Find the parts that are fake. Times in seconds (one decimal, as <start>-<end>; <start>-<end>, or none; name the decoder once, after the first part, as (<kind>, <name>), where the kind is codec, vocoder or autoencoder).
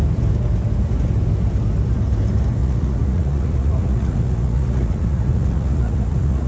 2.6-6.5 (vocoder, Vocos)